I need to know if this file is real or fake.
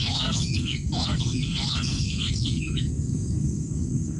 fake